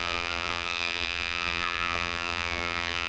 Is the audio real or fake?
fake